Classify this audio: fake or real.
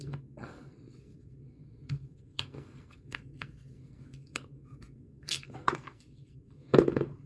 fake